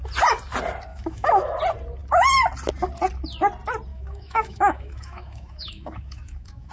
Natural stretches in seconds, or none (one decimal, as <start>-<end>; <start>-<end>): 0.0-0.9; 1.6-3.9